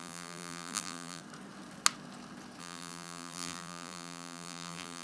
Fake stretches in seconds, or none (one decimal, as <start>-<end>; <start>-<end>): 0.0-1.2; 2.6-5.0